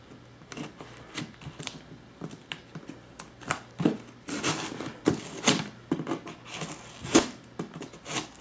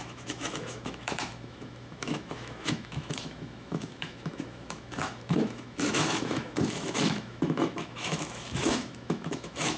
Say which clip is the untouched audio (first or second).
first